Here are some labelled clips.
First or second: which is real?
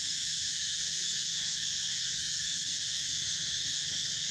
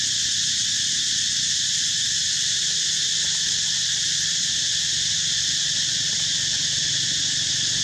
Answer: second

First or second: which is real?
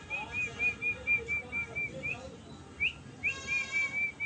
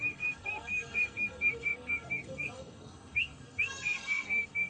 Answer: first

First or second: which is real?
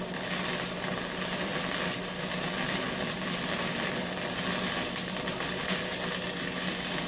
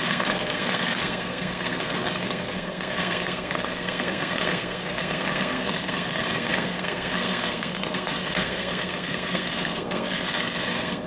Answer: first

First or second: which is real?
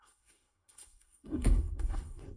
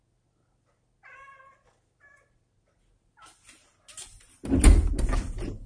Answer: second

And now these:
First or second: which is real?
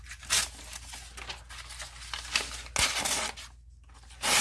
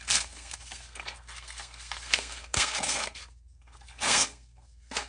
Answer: first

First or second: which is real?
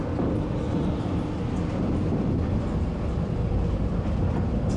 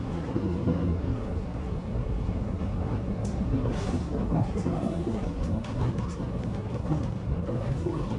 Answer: first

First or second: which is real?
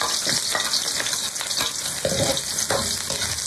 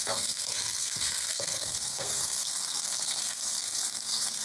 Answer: first